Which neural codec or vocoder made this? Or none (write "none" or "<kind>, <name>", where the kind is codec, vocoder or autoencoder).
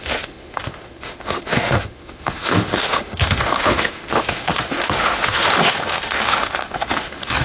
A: autoencoder, DAC-VAE